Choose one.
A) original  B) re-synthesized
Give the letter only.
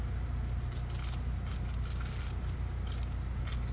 A